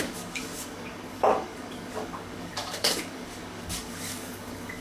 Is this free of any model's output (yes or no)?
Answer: no